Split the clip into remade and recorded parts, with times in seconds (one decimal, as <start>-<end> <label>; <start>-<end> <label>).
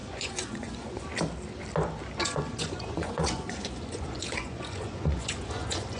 0.0-1.1 remade; 1.1-2.2 recorded; 2.2-6.0 remade